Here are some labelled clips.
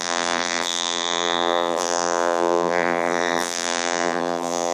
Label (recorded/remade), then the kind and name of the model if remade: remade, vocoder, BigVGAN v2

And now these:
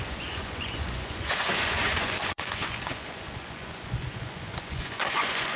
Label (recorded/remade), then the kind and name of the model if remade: remade, vocoder, Vocos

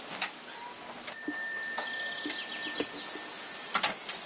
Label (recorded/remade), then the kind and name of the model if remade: recorded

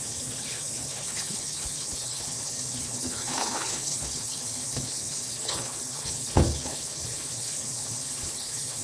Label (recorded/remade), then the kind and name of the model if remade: remade, codec, HILCodec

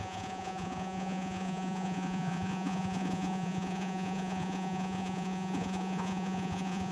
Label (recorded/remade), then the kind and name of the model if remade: remade, vocoder, Vocos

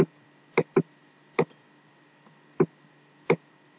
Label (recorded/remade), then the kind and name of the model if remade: recorded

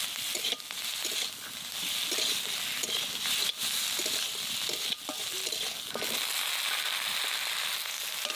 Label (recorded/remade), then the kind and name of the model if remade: recorded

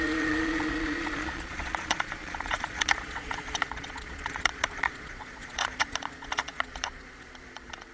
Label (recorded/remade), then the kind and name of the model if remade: remade, vocoder, Vocos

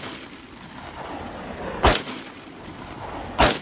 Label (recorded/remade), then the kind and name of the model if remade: recorded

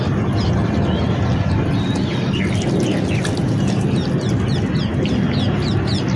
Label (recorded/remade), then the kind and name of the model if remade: recorded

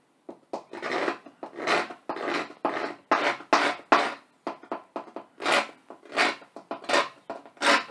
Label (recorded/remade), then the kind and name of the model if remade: recorded